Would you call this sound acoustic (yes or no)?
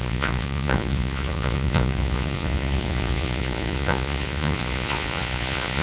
no